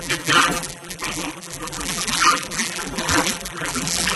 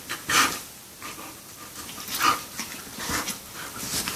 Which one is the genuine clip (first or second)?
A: second